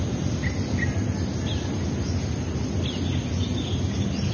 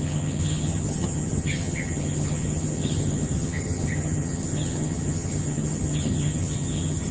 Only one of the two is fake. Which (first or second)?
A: second